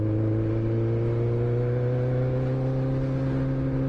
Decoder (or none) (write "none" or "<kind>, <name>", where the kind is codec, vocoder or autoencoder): none